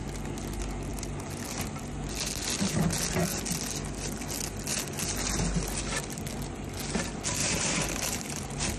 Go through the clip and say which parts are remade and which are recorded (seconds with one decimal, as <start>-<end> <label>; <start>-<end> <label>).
0.0-7.4 recorded; 7.4-8.8 remade